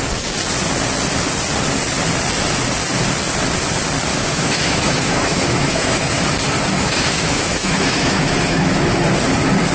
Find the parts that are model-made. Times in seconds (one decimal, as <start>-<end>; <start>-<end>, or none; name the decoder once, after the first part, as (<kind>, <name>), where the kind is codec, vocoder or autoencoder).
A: 4.1-6.2 (autoencoder, DAC-VAE); 6.7-9.0